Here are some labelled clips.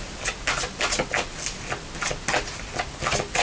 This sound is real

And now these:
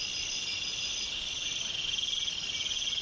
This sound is real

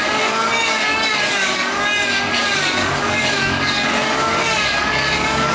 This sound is fake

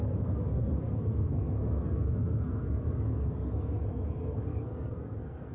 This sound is fake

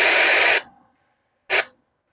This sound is real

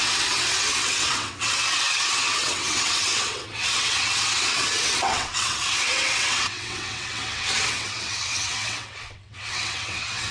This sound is fake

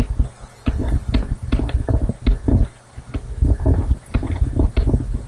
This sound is real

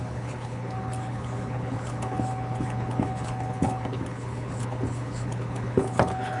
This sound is fake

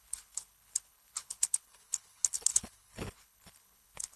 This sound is fake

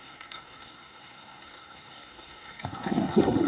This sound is fake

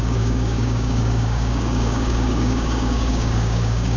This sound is fake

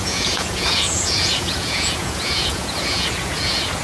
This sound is fake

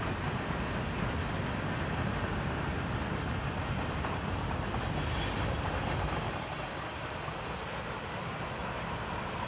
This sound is real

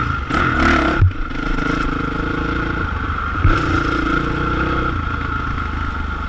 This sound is real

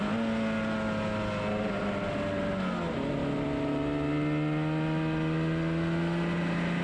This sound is real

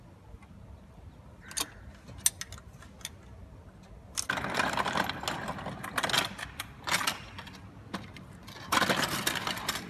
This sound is real